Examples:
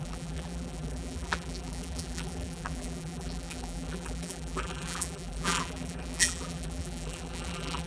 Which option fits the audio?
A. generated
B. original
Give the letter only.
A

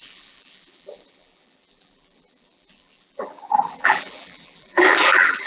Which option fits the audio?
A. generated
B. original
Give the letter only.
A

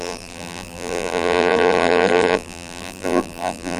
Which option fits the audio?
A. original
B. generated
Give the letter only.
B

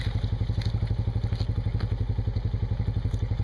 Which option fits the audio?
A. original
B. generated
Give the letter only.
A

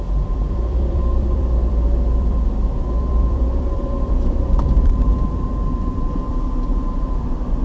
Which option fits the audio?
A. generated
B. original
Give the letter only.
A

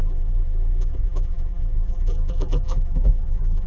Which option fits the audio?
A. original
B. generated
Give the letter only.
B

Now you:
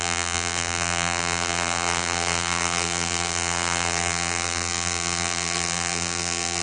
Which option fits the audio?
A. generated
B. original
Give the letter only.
A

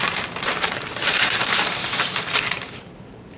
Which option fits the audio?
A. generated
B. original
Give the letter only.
A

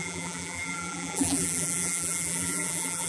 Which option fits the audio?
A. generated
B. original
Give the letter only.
A